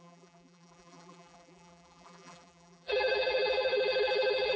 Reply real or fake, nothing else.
fake